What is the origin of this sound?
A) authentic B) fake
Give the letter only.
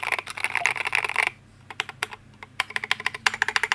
A